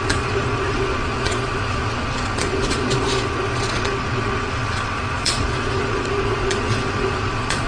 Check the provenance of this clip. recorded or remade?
remade